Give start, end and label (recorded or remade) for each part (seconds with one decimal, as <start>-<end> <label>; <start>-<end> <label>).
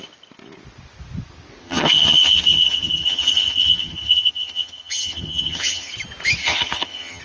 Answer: 0.0-1.6 recorded; 1.6-5.9 remade; 5.9-6.4 recorded; 6.4-7.2 remade